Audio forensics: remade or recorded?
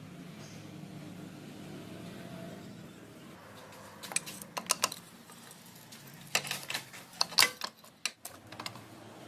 recorded